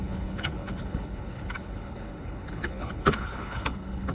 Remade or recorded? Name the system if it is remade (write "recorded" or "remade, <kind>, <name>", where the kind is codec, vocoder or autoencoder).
remade, codec, HILCodec